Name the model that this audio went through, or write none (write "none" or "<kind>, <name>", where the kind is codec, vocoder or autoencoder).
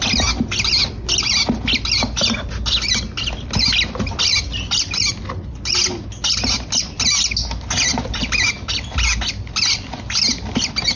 none